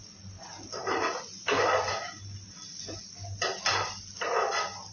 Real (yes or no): yes